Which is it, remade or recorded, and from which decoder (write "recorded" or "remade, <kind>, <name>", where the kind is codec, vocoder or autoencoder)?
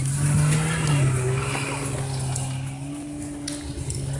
recorded